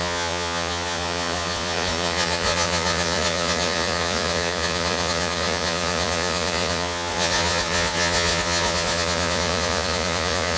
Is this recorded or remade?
remade